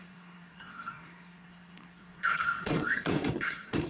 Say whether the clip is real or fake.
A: fake